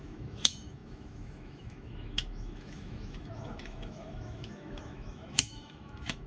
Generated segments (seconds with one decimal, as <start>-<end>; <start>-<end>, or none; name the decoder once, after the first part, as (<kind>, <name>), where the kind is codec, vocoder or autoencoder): 0.0-6.3 (autoencoder, DAC-VAE)